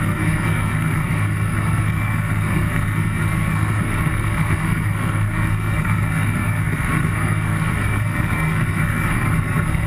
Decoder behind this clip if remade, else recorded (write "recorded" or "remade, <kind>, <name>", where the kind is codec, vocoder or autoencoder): remade, codec, SNAC